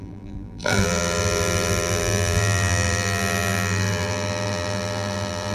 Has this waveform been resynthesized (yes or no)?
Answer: yes